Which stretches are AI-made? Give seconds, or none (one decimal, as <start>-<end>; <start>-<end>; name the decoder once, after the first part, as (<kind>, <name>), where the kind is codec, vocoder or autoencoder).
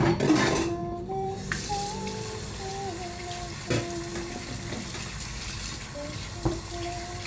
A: 0.8-1.7 (vocoder, BigVGAN v2)